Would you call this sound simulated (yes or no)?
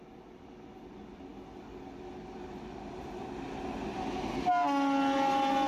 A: no